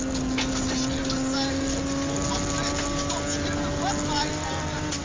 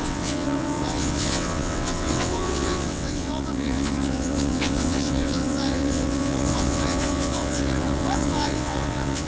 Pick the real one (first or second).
first